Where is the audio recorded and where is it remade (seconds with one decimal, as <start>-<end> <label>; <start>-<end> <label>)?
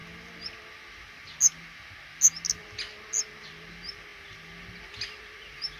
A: 0.0-5.8 recorded